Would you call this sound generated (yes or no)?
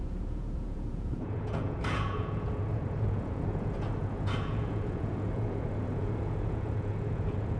yes